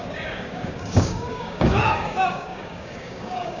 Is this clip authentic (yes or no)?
no